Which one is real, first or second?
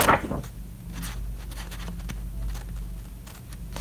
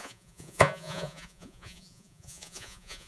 first